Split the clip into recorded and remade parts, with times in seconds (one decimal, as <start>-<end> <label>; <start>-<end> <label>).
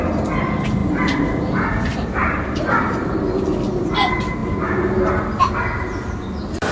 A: 0.0-0.8 recorded; 0.8-2.6 remade; 2.6-6.7 recorded